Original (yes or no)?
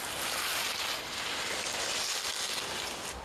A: yes